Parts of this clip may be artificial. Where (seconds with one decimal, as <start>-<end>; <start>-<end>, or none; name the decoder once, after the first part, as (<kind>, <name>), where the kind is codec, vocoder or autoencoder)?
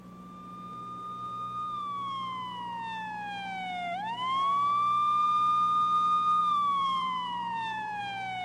6.4-8.0 (vocoder, BigVGAN v2)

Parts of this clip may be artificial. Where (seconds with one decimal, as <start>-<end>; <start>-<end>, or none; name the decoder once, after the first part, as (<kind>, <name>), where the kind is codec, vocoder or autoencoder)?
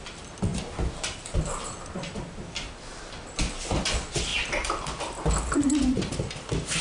4.3-6.1 (vocoder, BigVGAN v2)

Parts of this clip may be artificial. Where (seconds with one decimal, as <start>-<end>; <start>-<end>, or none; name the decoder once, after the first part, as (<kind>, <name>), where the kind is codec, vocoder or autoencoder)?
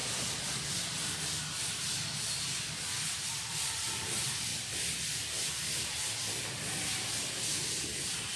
3.7-4.5 (vocoder, BigVGAN v2); 7.6-8.4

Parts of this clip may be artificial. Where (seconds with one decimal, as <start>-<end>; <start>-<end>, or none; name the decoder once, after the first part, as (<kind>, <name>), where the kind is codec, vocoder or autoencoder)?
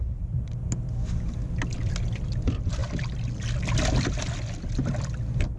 none